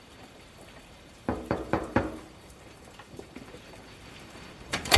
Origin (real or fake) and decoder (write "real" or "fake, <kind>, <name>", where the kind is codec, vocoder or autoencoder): fake, vocoder, BigVGAN v2